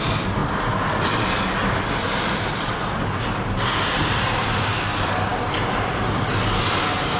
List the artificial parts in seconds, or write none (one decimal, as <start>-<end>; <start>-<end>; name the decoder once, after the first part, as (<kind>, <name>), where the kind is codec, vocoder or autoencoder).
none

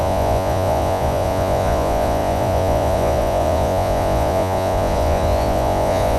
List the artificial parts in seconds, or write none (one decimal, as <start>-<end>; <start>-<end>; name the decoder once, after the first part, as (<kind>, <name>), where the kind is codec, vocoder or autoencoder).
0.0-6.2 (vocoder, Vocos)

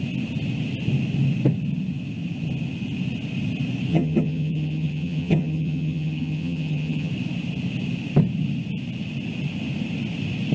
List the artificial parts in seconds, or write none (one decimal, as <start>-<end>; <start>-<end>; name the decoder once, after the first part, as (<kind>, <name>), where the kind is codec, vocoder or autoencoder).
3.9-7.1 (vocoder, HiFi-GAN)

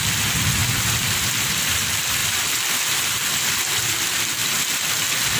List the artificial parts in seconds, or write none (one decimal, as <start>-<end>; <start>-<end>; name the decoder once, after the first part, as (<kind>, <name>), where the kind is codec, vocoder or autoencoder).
0.6-1.5 (vocoder, BigVGAN v2); 2.2-3.9; 4.4-4.9